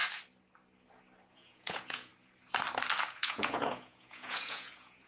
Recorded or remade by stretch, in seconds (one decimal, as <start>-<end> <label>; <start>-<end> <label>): 0.0-1.3 recorded; 1.3-2.1 remade; 2.1-3.1 recorded; 3.1-5.1 remade